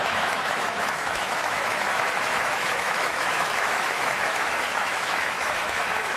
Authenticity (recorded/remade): remade